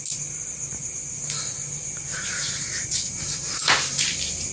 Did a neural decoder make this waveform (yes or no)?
no